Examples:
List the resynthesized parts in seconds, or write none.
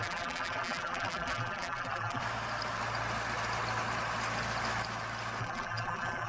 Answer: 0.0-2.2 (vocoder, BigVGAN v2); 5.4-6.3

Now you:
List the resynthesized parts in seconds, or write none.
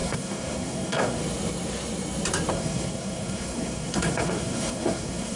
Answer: 0.0-1.2 (codec, SNAC); 2.5-5.4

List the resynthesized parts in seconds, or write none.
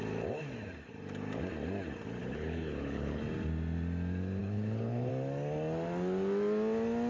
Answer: 2.2-3.2 (codec, HILCodec); 4.4-5.1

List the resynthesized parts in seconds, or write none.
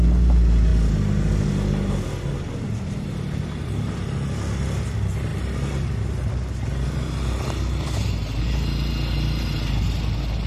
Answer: none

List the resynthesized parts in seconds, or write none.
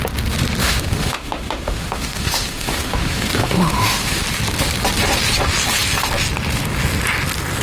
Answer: 0.6-4.2 (autoencoder, DAC-VAE)